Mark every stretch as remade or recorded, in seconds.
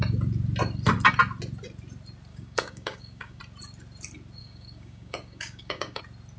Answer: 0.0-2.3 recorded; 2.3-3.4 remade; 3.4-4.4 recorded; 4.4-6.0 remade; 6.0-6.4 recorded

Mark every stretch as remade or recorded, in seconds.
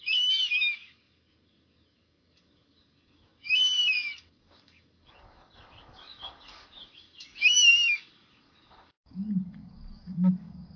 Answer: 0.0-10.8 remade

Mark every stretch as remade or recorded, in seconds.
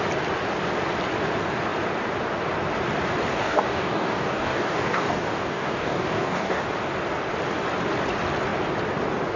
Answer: 0.0-3.3 recorded; 3.3-6.6 remade; 6.6-9.4 recorded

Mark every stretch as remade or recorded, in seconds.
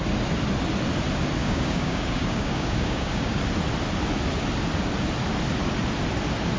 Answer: 0.0-1.4 recorded; 1.4-3.4 remade; 3.4-6.6 recorded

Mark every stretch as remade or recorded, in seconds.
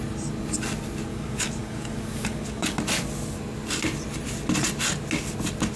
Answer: 0.0-1.1 recorded; 1.1-2.8 remade; 2.8-5.8 recorded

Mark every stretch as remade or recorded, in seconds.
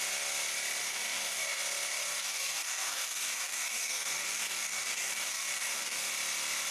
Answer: 0.0-0.8 recorded; 0.8-1.6 remade; 1.6-2.1 recorded; 2.1-6.1 remade; 6.1-6.7 recorded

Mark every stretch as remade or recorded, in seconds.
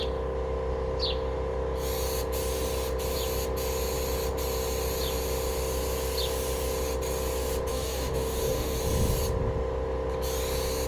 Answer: 0.0-7.7 recorded; 7.7-8.8 remade; 8.8-10.9 recorded